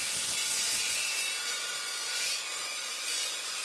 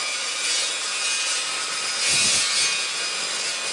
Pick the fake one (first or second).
first